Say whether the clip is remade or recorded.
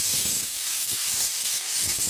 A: remade